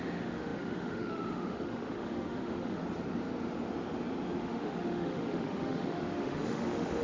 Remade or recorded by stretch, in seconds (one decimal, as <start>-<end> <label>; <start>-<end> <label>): 0.0-2.8 remade; 2.8-4.4 recorded; 4.4-7.0 remade